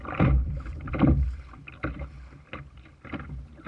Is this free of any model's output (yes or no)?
yes